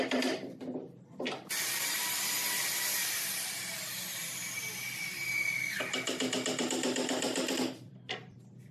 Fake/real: fake